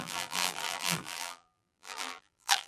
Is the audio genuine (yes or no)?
no